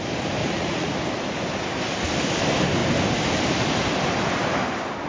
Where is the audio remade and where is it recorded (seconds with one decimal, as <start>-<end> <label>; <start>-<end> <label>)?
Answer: 0.0-0.4 recorded; 0.4-0.9 remade; 0.9-5.1 recorded